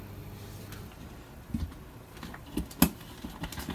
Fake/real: real